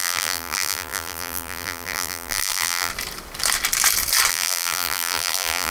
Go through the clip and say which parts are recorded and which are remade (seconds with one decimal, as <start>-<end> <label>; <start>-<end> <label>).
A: 0.0-2.9 remade; 2.9-4.3 recorded; 4.3-5.7 remade